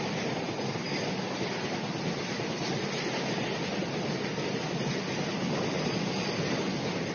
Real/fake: real